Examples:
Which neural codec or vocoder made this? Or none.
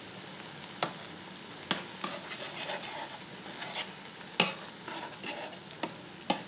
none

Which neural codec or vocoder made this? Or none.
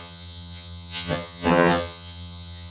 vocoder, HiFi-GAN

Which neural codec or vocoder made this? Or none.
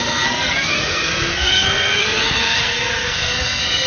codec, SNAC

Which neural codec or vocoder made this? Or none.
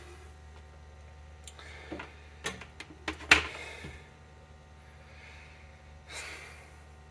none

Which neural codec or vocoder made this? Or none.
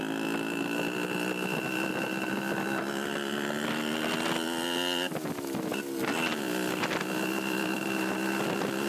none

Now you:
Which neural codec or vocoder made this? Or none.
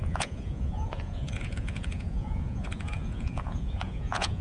vocoder, Vocos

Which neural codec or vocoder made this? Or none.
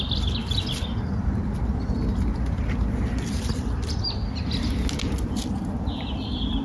none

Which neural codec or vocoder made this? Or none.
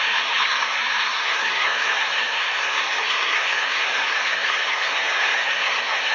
codec, SNAC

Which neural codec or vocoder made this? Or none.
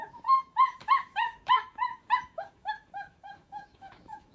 autoencoder, DAC-VAE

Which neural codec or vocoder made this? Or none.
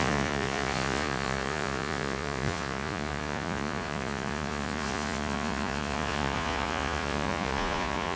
vocoder, Vocos